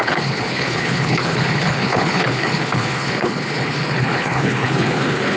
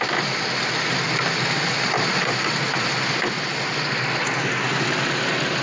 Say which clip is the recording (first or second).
second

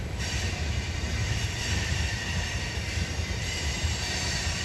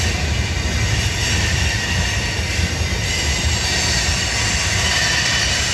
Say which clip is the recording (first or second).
second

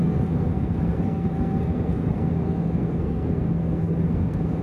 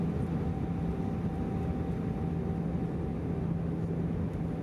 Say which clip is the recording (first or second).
second